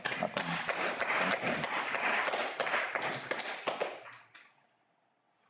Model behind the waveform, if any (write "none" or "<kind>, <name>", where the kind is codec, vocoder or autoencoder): none